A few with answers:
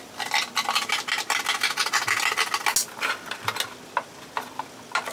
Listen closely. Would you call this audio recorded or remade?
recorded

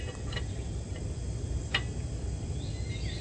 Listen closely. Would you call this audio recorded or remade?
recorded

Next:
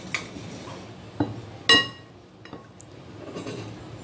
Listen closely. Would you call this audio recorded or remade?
recorded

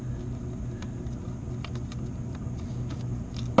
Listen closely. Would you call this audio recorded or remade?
recorded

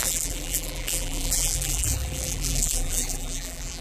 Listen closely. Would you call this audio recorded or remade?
remade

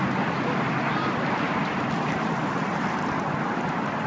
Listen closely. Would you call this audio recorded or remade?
recorded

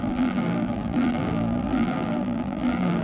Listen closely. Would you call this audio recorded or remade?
remade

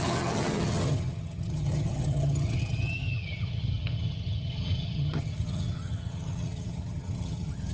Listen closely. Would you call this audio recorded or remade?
remade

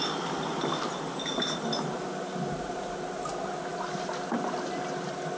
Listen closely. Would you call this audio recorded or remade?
recorded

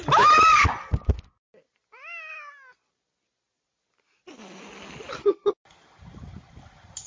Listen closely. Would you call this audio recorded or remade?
recorded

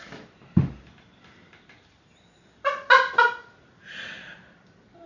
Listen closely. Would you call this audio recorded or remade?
recorded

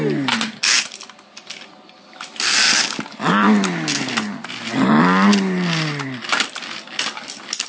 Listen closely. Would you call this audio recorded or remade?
recorded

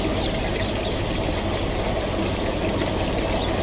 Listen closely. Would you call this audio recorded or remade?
recorded